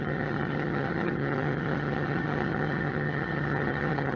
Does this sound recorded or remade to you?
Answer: remade